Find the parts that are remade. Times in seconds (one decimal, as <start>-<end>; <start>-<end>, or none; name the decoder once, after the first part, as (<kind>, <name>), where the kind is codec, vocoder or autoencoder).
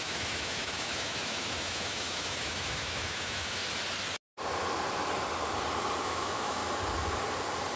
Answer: 0.0-3.6 (autoencoder, DAC-VAE); 6.0-6.6